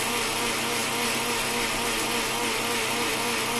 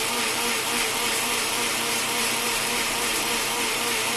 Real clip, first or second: first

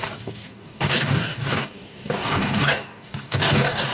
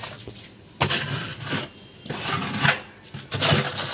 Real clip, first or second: second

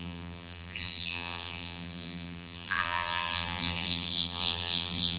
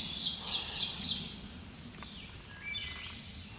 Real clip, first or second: second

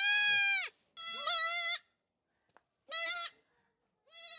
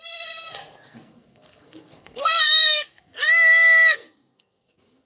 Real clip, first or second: first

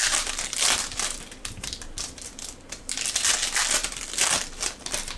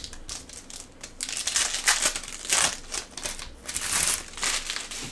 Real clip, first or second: second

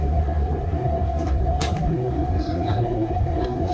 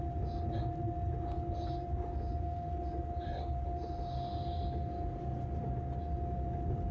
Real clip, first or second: second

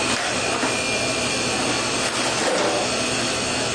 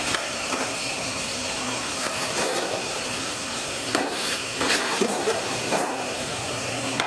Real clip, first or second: first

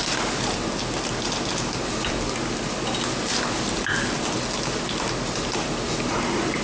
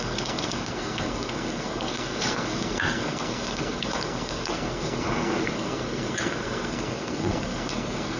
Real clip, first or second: first